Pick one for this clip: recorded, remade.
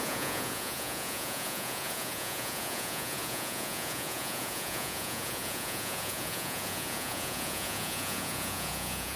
remade